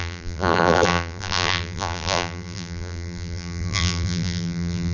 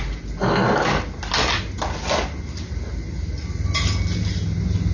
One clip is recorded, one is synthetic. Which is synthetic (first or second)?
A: first